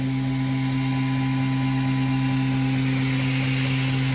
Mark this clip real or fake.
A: real